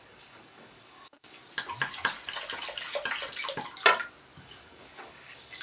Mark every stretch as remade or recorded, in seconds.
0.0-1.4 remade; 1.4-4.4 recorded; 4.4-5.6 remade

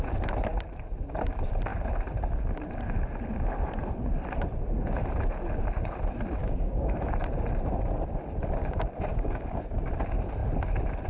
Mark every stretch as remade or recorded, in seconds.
0.0-6.4 recorded; 6.4-7.1 remade; 7.1-9.1 recorded; 9.1-9.9 remade; 9.9-11.1 recorded

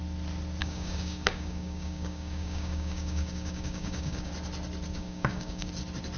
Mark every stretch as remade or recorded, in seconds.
0.0-0.6 recorded; 0.6-4.3 remade; 4.3-4.9 recorded; 4.9-5.7 remade; 5.7-6.2 recorded

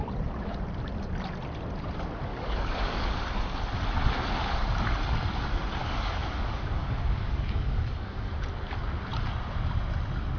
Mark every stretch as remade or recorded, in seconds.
0.0-2.3 recorded; 2.3-3.1 remade; 3.1-5.8 recorded; 5.8-8.3 remade; 8.3-10.4 recorded

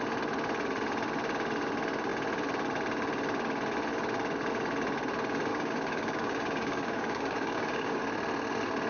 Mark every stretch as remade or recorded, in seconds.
0.0-5.5 recorded; 5.5-8.0 remade; 8.0-8.9 recorded